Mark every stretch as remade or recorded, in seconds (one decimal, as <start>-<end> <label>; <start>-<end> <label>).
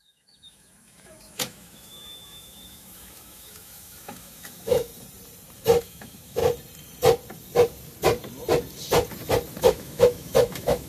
0.0-4.9 remade; 4.9-5.8 recorded; 5.8-6.4 remade; 6.4-9.6 recorded; 9.6-10.9 remade